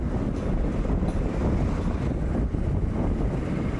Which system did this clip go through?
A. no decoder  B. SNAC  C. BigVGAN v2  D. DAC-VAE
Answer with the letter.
A